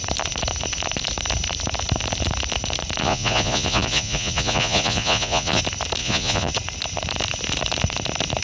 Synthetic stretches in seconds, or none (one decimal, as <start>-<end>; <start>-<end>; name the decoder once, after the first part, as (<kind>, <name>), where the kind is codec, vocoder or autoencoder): 3.0-5.6 (vocoder, Vocos); 6.0-6.5